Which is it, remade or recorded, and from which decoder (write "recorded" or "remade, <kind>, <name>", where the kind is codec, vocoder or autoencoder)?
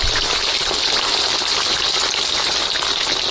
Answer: recorded